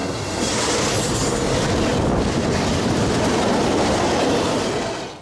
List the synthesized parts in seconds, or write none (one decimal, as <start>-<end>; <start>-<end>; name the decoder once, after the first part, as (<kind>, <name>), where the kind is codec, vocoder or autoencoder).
0.0-0.5 (codec, SNAC)